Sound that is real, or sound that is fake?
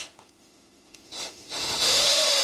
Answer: fake